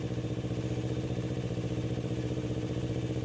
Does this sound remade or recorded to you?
remade